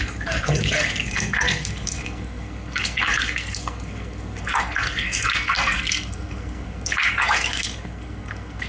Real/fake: fake